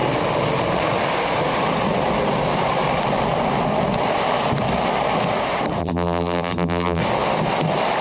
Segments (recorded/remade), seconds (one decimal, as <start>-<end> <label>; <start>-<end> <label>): 0.0-5.8 recorded; 5.8-7.0 remade; 7.0-8.0 recorded